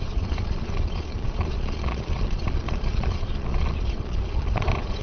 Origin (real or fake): fake